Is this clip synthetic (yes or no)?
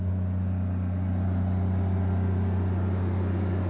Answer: no